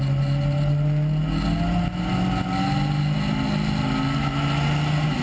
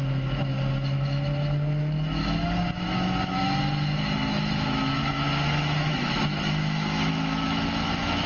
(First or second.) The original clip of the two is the first